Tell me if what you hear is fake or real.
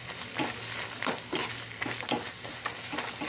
real